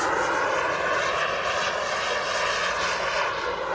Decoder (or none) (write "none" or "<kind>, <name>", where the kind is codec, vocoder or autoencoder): none